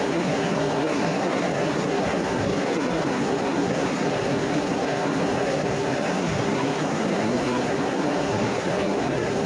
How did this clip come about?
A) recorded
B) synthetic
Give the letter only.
B